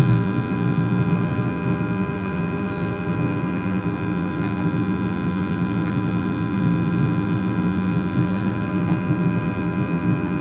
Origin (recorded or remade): remade